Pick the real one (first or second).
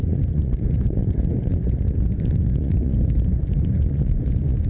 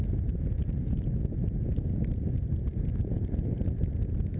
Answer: second